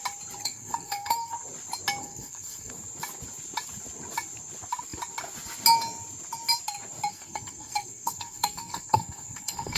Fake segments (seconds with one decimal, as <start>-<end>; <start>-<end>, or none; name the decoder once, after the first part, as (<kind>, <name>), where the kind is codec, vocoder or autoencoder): 0.4-1.3 (codec, SNAC); 2.0-2.7; 7.1-9.8